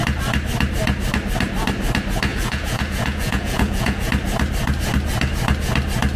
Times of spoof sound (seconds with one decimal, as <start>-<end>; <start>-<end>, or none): 2.3-4.1